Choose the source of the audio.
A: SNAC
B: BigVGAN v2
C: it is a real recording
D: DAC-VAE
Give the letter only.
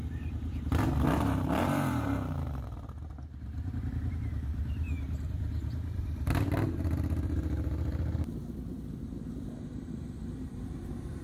B